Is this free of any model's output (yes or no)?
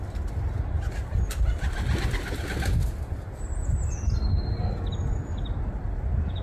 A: yes